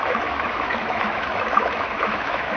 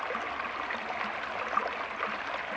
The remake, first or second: first